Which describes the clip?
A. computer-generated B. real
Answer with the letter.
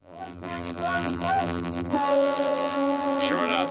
A